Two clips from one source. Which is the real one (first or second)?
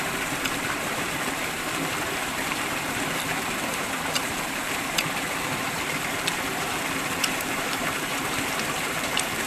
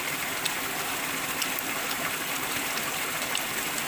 second